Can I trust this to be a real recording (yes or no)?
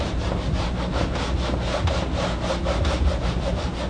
yes